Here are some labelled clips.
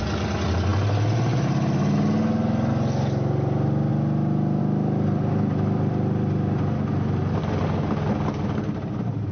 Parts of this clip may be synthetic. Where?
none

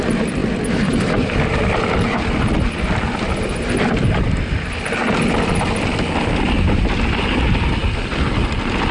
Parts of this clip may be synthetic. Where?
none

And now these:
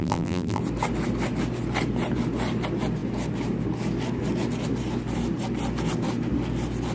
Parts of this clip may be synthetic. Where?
0.0-0.6

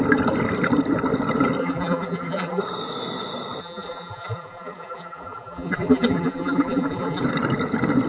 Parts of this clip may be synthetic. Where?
1.6-2.6; 3.6-7.2